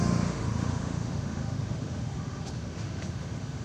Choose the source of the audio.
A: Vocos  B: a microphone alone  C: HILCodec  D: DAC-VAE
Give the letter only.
D